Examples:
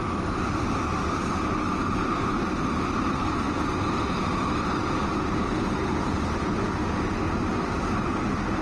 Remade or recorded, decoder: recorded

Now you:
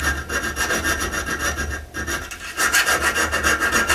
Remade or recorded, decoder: recorded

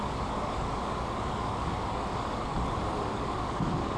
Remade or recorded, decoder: remade, codec, DAC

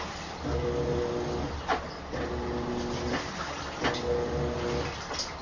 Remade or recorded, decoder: recorded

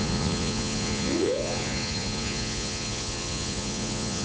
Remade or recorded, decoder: remade, vocoder, Vocos